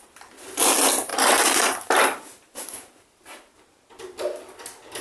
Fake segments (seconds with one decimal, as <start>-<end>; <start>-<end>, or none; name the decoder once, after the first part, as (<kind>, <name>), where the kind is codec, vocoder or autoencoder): 1.1-3.9 (vocoder, BigVGAN v2)

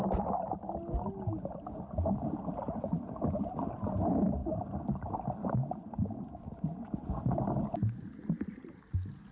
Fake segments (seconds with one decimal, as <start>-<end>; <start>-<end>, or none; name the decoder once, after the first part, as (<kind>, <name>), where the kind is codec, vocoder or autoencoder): 4.4-7.1 (vocoder, BigVGAN v2)

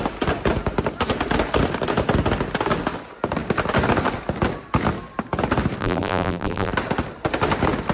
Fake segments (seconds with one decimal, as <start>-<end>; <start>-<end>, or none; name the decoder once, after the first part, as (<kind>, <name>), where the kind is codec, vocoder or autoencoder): 5.8-6.7 (vocoder, BigVGAN v2)

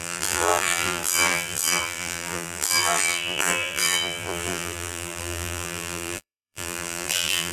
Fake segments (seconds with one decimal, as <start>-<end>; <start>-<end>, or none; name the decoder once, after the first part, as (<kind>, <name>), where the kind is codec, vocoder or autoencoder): 0.0-7.5 (vocoder, BigVGAN v2)

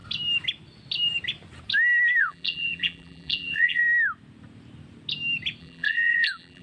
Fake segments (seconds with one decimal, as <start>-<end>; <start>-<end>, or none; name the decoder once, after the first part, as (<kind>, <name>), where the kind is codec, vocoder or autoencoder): 2.2-3.8 (vocoder, BigVGAN v2); 5.6-6.6

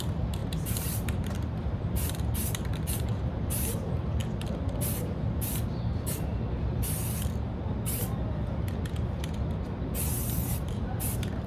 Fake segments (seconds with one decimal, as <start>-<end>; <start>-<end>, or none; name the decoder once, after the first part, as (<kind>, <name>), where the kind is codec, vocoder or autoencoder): 0.0-4.2 (vocoder, BigVGAN v2); 4.8-6.3; 10.0-11.5

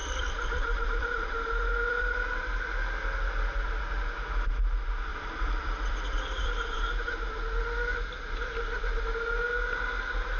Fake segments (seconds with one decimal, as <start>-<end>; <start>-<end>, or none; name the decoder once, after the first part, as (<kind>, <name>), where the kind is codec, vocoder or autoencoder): 0.0-2.4 (vocoder, BigVGAN v2); 5.1-6.9

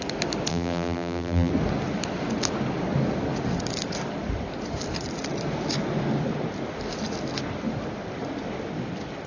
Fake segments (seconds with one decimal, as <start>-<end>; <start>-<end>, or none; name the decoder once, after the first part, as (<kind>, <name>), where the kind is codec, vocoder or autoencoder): 0.5-1.5 (vocoder, BigVGAN v2)